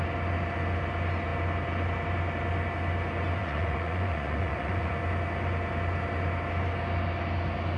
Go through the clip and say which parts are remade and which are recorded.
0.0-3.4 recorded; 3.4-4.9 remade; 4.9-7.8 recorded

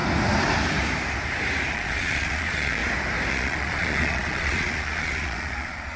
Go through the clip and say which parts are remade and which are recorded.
0.0-1.7 recorded; 1.7-2.8 remade; 2.8-3.3 recorded; 3.3-6.0 remade

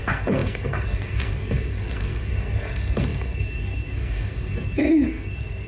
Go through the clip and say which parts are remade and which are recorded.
0.0-5.7 remade

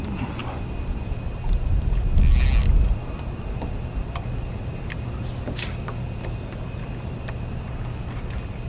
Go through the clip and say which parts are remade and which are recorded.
0.0-8.7 recorded

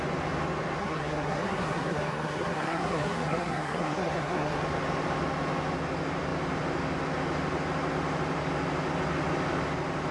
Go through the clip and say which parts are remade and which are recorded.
0.0-0.8 recorded; 0.8-4.6 remade; 4.6-10.1 recorded

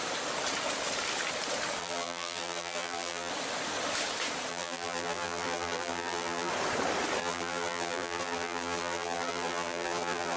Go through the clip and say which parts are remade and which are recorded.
0.0-1.8 recorded; 1.8-3.3 remade; 3.3-4.5 recorded; 4.5-6.5 remade; 6.5-7.2 recorded; 7.2-10.4 remade